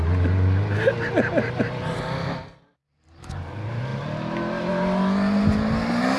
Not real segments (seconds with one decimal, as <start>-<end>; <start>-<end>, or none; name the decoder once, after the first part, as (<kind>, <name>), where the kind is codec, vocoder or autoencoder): none